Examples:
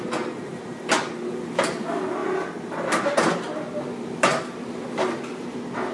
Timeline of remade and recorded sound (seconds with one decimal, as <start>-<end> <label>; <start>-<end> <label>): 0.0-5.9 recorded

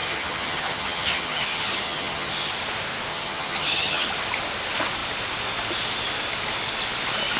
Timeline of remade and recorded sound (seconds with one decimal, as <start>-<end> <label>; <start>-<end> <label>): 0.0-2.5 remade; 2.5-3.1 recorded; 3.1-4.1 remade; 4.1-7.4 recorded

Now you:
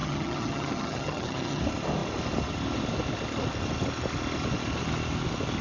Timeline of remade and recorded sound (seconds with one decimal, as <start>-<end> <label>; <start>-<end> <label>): 0.0-1.6 remade; 1.6-5.6 recorded

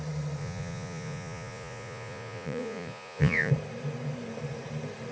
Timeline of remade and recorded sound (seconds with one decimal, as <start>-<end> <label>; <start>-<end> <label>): 0.0-0.4 recorded; 0.4-3.5 remade; 3.5-5.1 recorded

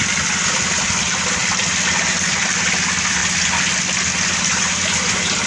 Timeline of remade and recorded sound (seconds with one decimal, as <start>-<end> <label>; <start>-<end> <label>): 0.0-3.2 remade; 3.2-4.4 recorded; 4.4-5.5 remade

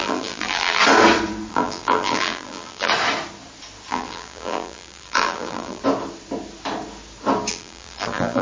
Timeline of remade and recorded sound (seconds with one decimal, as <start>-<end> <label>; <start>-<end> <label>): 0.0-0.8 remade; 0.8-1.5 recorded; 1.5-2.9 remade; 2.9-3.9 recorded; 3.9-5.8 remade; 5.8-7.5 recorded; 7.5-8.4 remade